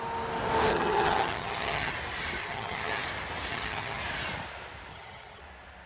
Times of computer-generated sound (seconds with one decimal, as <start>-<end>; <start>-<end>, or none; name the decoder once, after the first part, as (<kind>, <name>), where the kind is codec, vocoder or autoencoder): 0.7-1.9 (vocoder, HiFi-GAN); 2.4-3.0; 3.5-4.0; 4.9-5.4